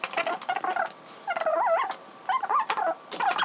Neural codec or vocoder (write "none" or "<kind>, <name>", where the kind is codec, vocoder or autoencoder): none